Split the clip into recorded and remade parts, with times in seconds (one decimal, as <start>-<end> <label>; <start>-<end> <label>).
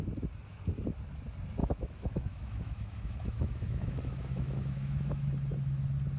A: 0.0-1.6 recorded; 1.6-5.3 remade; 5.3-6.2 recorded